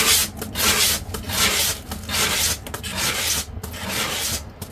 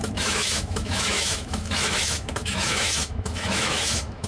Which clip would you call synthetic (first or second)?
second